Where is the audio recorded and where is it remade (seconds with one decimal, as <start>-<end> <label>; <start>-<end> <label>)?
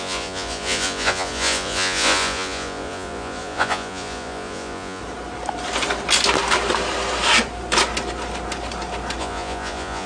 0.0-5.0 remade; 5.0-9.2 recorded; 9.2-10.1 remade